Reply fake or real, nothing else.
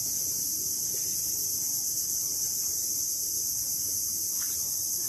real